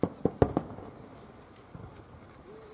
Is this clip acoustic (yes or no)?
yes